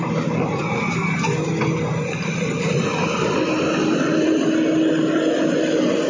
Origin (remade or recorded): recorded